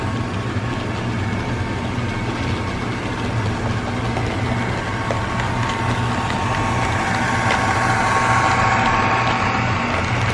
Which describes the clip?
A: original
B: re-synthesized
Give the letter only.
A